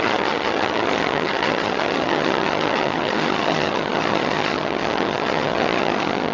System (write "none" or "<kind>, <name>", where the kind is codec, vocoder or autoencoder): vocoder, HiFi-GAN